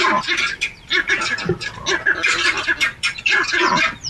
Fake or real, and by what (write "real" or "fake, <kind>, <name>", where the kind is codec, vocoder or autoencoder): real